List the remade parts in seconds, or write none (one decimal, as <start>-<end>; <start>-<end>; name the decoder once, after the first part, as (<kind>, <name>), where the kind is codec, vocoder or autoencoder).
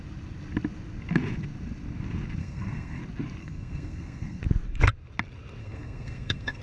2.4-3.0 (codec, SNAC); 3.4-4.4; 5.6-6.6